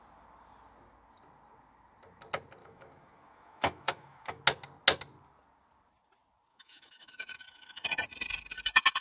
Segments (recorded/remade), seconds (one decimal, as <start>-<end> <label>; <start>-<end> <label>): 0.0-2.6 recorded; 2.6-4.4 remade; 4.4-6.5 recorded; 6.5-7.9 remade; 7.9-9.0 recorded